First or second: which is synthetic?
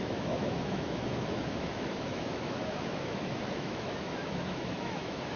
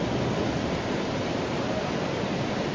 first